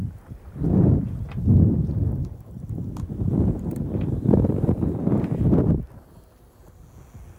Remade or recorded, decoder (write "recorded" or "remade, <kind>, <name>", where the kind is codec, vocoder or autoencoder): recorded